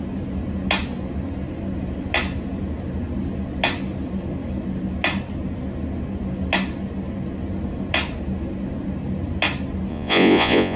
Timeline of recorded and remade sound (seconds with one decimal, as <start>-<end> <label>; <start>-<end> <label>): 0.0-9.9 recorded; 9.9-10.8 remade